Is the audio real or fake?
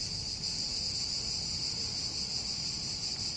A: real